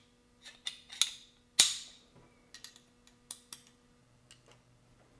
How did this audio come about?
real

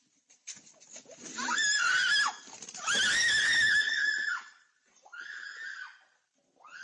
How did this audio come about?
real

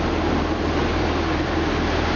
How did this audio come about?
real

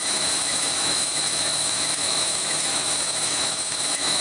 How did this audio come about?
fake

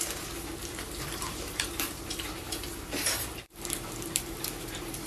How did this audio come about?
fake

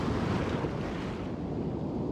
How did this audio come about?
real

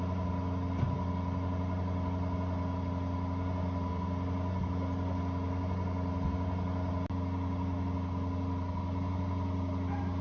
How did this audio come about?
real